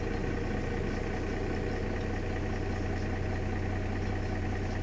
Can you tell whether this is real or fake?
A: real